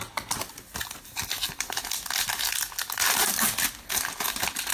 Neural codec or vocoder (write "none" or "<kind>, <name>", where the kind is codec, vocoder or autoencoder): none